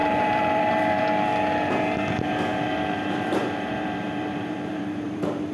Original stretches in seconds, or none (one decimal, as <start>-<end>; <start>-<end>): 1.0-2.5